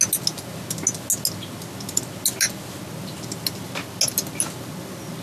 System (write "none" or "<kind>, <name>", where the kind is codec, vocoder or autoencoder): none